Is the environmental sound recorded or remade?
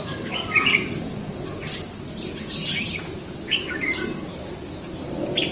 remade